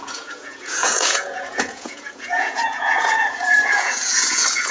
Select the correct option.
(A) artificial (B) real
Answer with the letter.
A